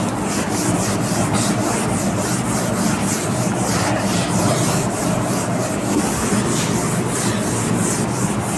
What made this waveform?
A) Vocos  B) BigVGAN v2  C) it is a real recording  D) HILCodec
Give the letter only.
C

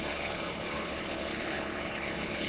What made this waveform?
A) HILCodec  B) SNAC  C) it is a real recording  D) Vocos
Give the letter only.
A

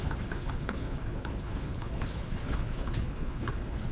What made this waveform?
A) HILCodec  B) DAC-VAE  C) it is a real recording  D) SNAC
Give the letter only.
A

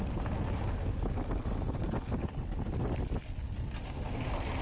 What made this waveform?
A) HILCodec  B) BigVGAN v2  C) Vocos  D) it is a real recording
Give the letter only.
D